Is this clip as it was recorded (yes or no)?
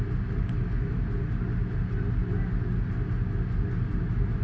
yes